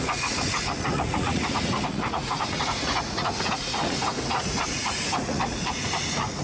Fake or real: fake